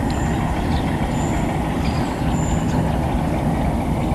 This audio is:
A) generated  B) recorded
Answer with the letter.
B